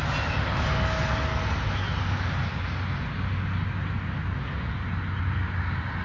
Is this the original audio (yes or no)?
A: yes